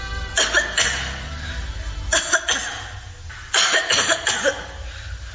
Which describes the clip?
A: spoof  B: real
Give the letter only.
B